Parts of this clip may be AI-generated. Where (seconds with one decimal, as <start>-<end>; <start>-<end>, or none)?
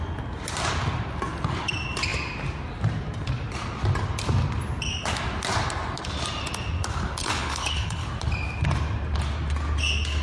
7.2-8.1